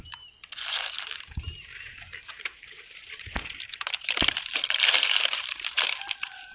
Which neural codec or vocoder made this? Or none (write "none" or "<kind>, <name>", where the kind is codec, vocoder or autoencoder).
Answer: vocoder, BigVGAN v2